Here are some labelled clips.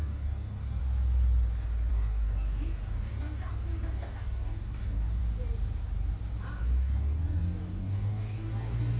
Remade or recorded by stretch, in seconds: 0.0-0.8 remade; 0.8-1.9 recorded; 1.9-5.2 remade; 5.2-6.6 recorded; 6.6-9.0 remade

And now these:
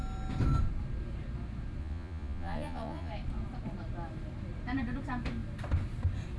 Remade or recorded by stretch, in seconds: 0.0-1.8 recorded; 1.8-3.1 remade; 3.1-6.4 recorded

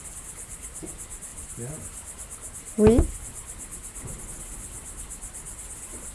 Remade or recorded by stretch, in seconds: 0.0-6.1 recorded

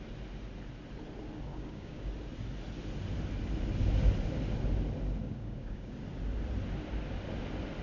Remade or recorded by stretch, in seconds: 0.0-1.5 recorded; 1.5-2.1 remade; 2.1-5.2 recorded; 5.2-5.9 remade; 5.9-7.8 recorded

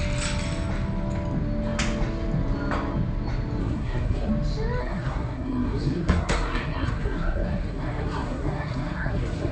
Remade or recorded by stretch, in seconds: 0.0-3.6 recorded; 3.6-4.3 remade; 4.3-4.8 recorded; 4.8-9.5 remade

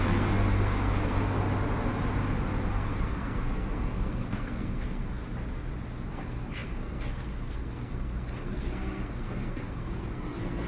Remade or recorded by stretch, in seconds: 0.0-1.4 remade; 1.4-2.7 recorded; 2.7-5.2 remade; 5.2-6.1 recorded; 6.1-10.7 remade

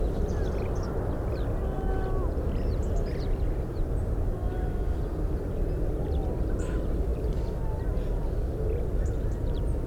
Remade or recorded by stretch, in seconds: 0.0-9.9 recorded

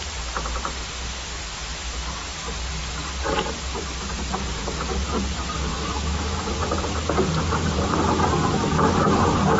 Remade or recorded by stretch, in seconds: 0.0-5.7 recorded; 5.7-6.5 remade; 6.5-9.6 recorded